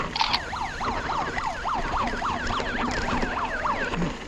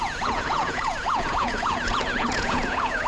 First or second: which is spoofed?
second